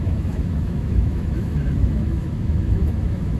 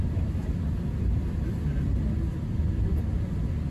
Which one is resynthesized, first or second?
first